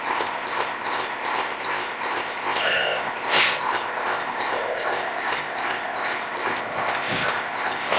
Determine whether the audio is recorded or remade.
remade